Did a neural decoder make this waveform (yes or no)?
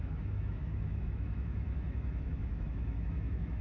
yes